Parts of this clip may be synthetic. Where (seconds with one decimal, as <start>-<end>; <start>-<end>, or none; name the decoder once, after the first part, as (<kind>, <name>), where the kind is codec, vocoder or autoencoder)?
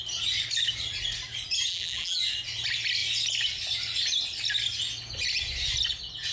1.7-2.2 (vocoder, BigVGAN v2)